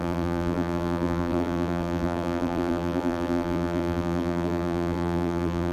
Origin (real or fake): fake